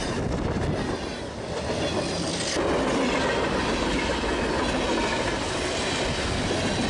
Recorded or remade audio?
recorded